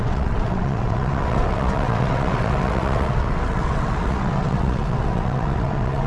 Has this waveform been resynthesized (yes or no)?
yes